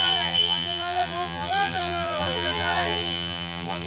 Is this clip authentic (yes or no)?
no